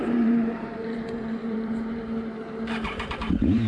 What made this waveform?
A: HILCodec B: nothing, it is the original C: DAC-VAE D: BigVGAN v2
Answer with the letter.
D